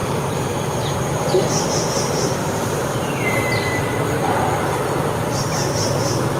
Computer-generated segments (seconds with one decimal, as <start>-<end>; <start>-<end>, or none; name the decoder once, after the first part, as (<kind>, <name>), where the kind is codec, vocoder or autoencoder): 0.0-3.8 (vocoder, BigVGAN v2)